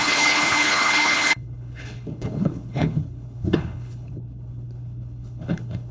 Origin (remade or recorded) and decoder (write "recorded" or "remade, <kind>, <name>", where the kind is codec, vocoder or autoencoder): remade, codec, HILCodec